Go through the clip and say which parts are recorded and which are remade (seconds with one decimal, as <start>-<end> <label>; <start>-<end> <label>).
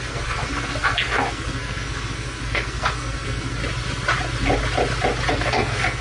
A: 0.0-3.6 remade; 3.6-5.3 recorded; 5.3-6.0 remade